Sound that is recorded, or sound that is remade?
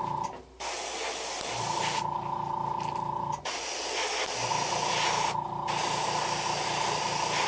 recorded